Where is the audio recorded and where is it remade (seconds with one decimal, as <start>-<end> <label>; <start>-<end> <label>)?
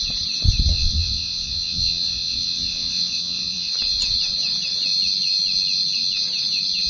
0.0-0.7 recorded; 0.7-3.7 remade; 3.7-6.9 recorded